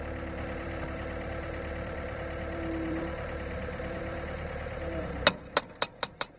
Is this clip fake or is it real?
fake